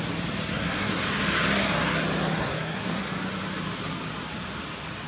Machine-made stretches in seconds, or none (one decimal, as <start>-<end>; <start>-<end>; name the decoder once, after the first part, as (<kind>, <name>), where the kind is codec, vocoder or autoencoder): 0.5-1.0 (codec, SNAC); 2.4-3.0